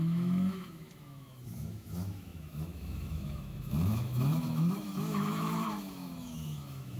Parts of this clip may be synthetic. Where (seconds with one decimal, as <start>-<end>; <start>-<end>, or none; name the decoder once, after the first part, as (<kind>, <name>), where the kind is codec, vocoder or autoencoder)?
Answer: 0.0-7.0 (autoencoder, DAC-VAE)